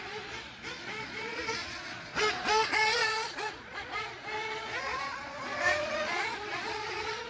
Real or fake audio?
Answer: fake